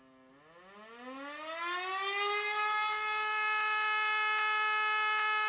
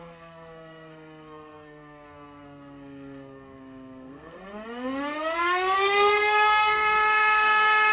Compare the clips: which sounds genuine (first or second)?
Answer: first